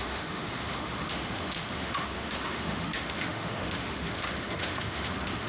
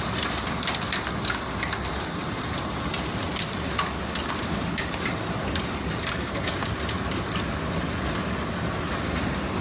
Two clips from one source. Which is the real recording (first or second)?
second